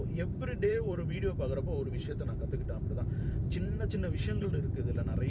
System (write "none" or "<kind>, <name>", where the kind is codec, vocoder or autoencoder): vocoder, BigVGAN v2